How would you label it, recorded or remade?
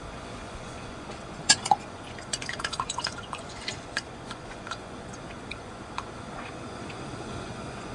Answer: remade